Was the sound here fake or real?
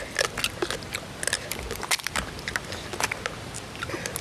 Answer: real